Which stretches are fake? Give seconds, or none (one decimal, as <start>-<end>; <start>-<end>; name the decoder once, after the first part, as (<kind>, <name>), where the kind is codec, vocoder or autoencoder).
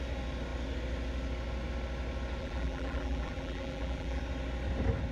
2.4-4.2 (vocoder, BigVGAN v2)